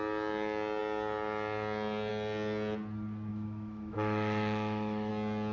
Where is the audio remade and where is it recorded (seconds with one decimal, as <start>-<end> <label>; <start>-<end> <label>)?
0.0-3.3 recorded; 3.3-5.1 remade; 5.1-5.5 recorded